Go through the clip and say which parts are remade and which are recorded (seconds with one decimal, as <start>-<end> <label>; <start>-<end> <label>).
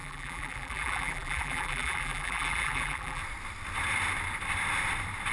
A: 0.0-3.2 remade; 3.2-5.3 recorded